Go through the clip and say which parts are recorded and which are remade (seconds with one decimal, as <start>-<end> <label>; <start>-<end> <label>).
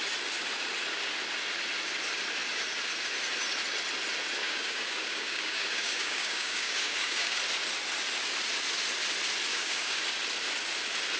0.0-4.4 recorded; 4.4-7.4 remade; 7.4-9.5 recorded; 9.5-10.0 remade; 10.0-11.2 recorded